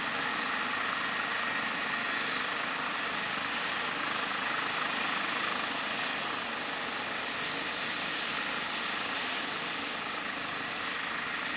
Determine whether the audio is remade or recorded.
recorded